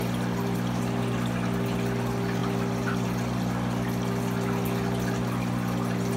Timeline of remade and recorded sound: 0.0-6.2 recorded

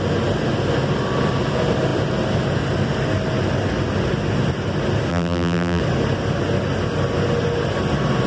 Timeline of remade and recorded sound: 0.0-5.1 recorded; 5.1-5.8 remade; 5.8-8.3 recorded

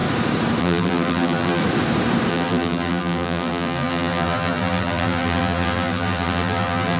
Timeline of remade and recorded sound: 0.0-0.6 recorded; 0.6-1.6 remade; 1.6-2.3 recorded; 2.3-7.0 remade

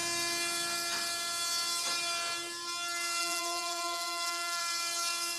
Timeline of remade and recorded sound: 0.0-3.2 recorded; 3.2-4.6 remade; 4.6-5.4 recorded

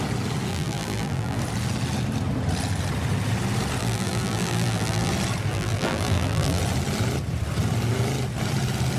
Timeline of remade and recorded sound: 0.0-0.5 recorded; 0.5-1.4 remade; 1.4-3.8 recorded; 3.8-5.1 remade; 5.1-5.5 recorded; 5.5-6.6 remade; 6.6-9.0 recorded